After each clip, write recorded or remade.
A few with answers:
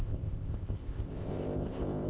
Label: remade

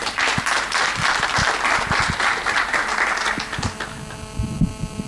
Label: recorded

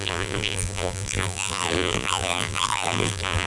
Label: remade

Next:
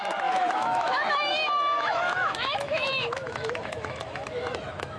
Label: remade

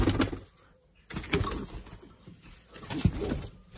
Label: recorded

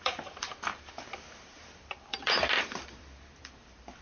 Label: remade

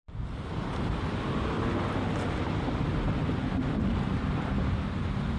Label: recorded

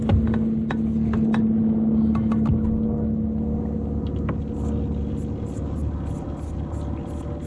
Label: recorded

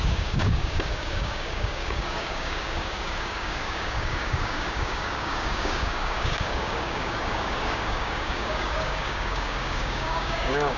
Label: remade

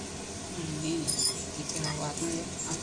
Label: recorded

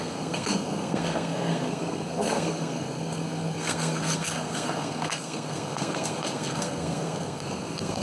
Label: remade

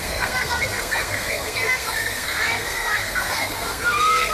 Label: remade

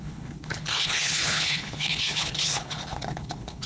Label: remade